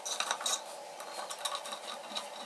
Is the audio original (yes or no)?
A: yes